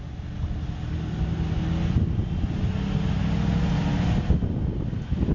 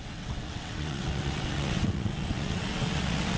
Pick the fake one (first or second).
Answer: second